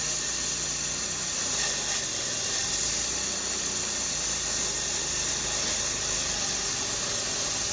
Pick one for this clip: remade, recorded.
recorded